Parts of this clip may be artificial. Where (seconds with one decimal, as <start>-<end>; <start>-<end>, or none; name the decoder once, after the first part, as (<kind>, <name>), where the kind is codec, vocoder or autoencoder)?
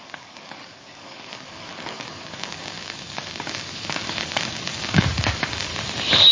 0.0-5.7 (codec, DAC)